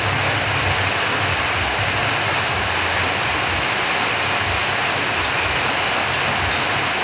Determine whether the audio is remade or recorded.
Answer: recorded